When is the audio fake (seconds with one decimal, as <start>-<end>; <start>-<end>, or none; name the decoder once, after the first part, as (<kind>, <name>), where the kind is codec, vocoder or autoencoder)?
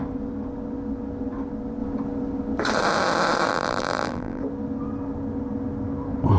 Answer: 3.5-4.4 (vocoder, BigVGAN v2)